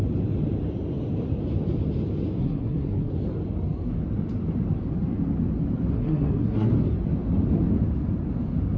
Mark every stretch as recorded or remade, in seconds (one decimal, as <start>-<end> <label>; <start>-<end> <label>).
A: 0.0-2.4 recorded; 2.4-3.1 remade; 3.1-5.9 recorded; 5.9-6.7 remade; 6.7-8.8 recorded